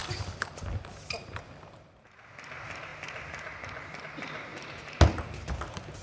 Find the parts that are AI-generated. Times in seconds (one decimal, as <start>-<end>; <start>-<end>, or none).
none